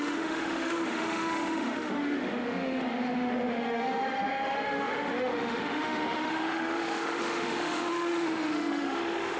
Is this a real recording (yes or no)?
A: no